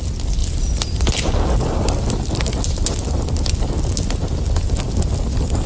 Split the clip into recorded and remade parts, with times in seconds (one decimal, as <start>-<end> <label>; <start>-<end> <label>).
0.0-5.7 recorded